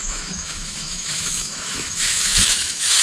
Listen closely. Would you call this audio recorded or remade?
remade